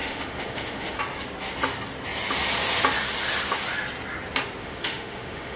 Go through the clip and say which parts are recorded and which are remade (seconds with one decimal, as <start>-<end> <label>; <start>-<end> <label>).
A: 0.0-1.0 remade; 1.0-4.6 recorded; 4.6-5.6 remade